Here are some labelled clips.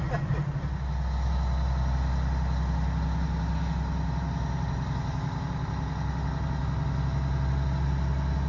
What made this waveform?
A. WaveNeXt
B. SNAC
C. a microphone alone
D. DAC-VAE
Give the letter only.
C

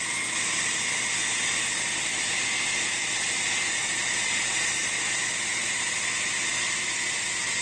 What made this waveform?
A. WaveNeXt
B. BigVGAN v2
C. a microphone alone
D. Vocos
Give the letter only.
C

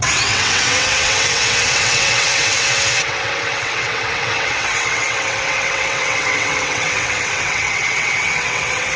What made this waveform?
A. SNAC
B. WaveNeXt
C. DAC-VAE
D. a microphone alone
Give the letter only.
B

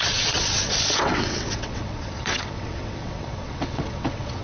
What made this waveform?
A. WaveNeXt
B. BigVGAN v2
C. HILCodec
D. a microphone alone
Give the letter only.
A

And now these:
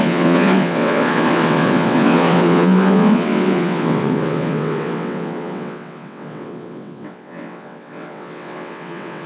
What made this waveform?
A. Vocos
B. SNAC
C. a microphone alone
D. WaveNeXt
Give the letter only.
D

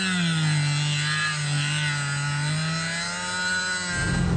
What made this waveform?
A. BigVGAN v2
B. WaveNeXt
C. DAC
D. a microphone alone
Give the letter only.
D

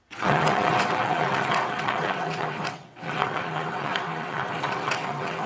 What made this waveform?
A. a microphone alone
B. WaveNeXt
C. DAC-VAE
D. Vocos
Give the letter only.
B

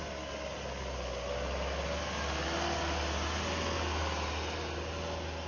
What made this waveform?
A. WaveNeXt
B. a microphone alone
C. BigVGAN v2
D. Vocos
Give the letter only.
B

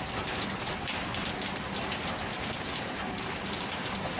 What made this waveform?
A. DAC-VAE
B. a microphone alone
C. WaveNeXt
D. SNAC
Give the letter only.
B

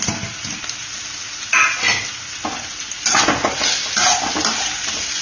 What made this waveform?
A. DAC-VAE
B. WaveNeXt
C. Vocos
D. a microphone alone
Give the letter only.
D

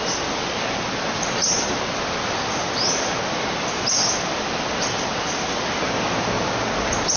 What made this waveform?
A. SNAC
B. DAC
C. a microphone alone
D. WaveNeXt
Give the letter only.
C